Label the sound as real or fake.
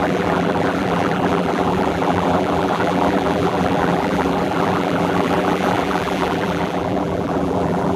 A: fake